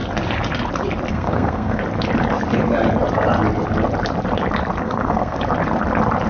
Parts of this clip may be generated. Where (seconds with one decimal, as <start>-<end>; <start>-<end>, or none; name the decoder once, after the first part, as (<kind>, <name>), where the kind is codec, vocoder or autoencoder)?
1.1-1.8 (codec, SNAC); 4.8-5.4